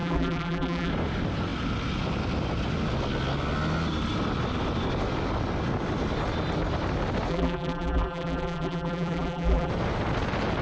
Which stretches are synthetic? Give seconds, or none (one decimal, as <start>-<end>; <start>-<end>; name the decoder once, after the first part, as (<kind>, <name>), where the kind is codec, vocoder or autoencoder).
0.0-0.9 (vocoder, BigVGAN v2); 7.3-9.7